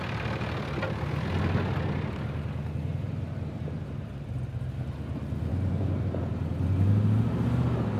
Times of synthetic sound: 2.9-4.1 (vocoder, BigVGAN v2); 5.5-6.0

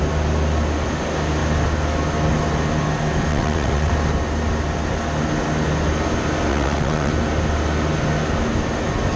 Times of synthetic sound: 3.3-3.9 (vocoder, WaveNeXt); 6.5-7.1

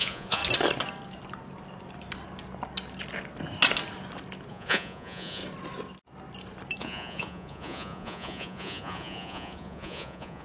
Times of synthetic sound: 0.0-0.4 (vocoder, Vocos); 4.5-5.4; 6.8-10.4

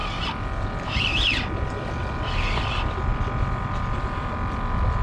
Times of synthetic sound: 3.1-4.3 (vocoder, BigVGAN v2)

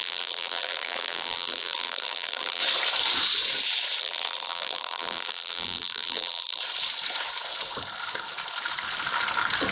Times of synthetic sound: 0.0-2.6 (vocoder, BigVGAN v2); 4.0-6.6

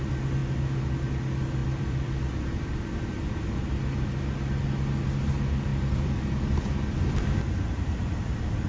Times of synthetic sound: 1.6-3.7 (vocoder, BigVGAN v2); 5.7-8.1